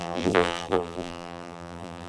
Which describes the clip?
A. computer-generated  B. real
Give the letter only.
A